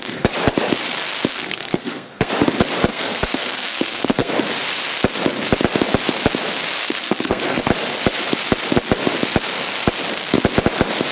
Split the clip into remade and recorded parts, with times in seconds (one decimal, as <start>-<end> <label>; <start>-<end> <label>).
0.0-1.3 recorded; 1.3-2.3 remade; 2.3-2.9 recorded; 2.9-4.3 remade; 4.3-6.8 recorded; 6.8-7.6 remade; 7.6-11.1 recorded